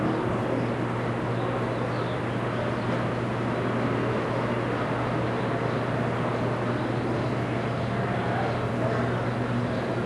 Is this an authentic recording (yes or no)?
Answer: yes